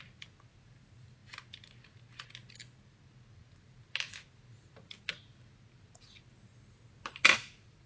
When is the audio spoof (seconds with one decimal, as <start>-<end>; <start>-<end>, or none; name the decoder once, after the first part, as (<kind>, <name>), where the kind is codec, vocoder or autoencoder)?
none